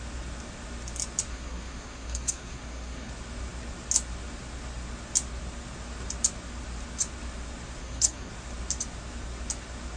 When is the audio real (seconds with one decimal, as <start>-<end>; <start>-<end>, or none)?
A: 0.0-1.3; 3.1-7.8; 8.3-10.0